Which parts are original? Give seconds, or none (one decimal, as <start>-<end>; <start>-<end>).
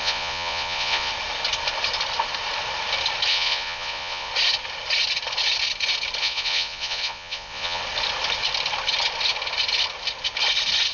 1.1-3.3; 4.3-6.2; 7.8-10.9